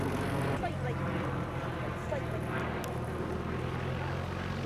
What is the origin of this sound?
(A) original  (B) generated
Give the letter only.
A